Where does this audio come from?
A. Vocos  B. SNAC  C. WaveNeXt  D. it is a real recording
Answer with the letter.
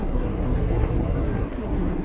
B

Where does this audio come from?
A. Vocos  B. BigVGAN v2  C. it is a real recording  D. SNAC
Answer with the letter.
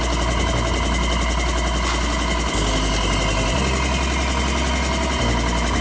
C